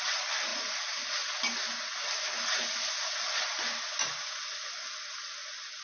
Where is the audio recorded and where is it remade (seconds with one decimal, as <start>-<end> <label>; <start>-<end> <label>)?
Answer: 0.0-5.8 recorded